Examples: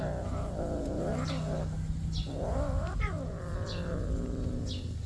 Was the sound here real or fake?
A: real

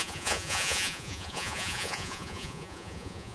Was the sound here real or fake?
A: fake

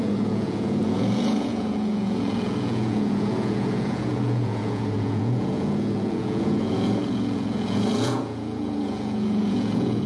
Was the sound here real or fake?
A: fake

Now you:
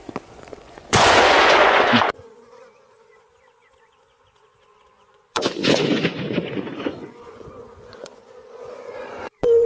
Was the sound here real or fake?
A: fake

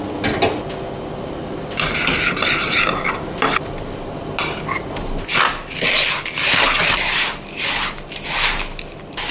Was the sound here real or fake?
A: real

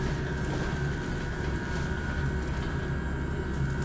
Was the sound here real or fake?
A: real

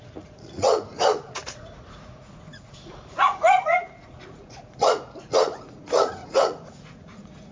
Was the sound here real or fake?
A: fake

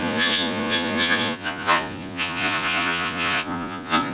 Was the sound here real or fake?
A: fake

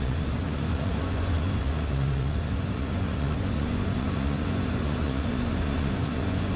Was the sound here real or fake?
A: fake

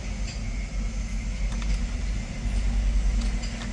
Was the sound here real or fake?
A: real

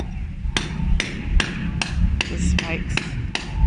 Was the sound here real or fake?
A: real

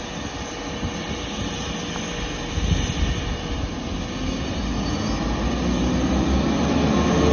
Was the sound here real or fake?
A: real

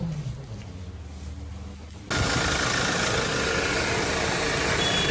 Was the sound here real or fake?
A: real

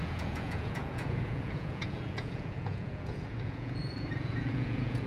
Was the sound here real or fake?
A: fake